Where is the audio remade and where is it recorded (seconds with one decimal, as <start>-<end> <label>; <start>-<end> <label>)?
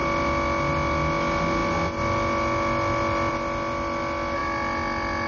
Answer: 0.0-5.3 recorded